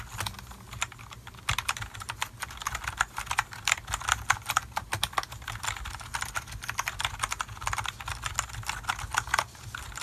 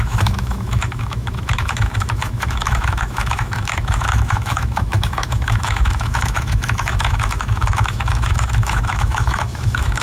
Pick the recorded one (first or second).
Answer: first